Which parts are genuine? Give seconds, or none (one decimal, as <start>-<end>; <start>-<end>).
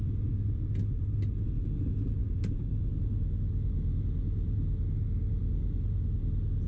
0.0-6.7